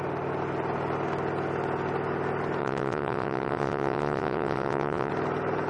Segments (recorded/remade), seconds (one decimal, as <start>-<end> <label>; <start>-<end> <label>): 0.0-2.6 recorded; 2.6-5.1 remade; 5.1-5.7 recorded